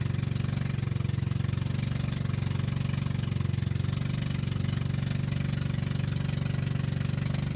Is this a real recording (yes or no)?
yes